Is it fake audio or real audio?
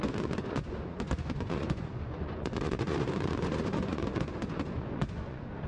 fake